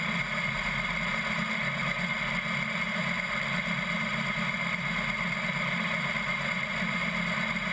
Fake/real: real